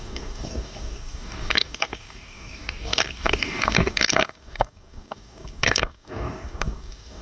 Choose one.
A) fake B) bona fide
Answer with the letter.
A